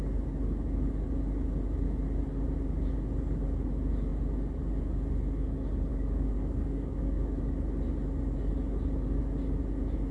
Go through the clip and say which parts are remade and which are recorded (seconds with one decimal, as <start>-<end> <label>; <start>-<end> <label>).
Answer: 0.0-5.9 recorded; 5.9-7.4 remade; 7.4-10.1 recorded

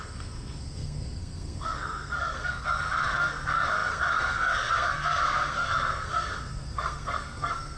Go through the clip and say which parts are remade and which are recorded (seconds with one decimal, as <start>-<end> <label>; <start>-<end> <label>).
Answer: 0.0-7.8 remade